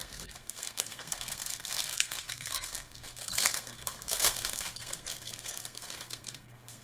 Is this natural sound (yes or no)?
no